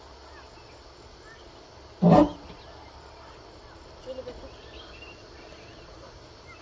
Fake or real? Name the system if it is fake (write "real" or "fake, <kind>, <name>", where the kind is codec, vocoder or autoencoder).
real